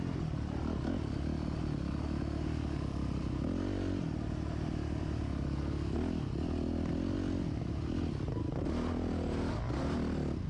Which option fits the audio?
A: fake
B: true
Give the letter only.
B